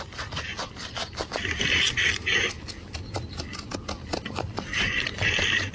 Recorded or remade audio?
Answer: recorded